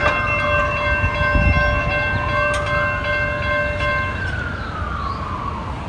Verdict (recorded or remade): recorded